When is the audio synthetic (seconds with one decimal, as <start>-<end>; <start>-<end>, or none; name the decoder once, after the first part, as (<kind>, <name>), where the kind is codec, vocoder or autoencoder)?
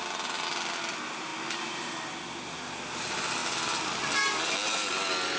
none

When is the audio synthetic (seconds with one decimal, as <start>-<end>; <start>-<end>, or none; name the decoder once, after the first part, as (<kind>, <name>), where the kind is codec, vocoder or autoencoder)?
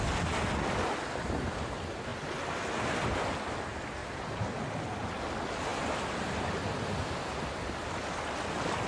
4.0-4.5 (vocoder, BigVGAN v2); 5.7-6.4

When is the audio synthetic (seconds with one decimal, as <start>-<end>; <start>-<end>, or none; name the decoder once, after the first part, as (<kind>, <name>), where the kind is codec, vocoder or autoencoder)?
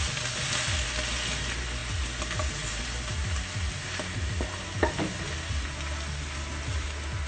none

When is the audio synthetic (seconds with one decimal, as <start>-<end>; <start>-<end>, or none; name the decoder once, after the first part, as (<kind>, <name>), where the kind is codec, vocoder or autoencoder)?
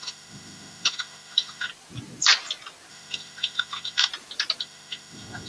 0.0-1.7 (autoencoder, DAC-VAE); 2.9-4.1; 4.6-5.5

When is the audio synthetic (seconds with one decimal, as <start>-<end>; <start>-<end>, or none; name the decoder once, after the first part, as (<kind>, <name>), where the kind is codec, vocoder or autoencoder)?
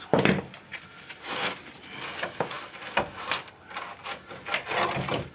none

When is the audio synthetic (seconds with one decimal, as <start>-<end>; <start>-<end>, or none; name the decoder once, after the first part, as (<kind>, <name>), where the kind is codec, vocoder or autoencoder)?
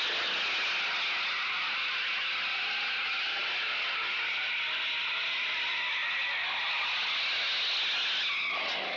none